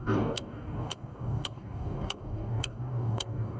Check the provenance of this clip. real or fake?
fake